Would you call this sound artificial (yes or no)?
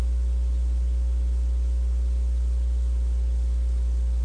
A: no